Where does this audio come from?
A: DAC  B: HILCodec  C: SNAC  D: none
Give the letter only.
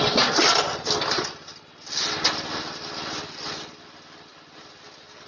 D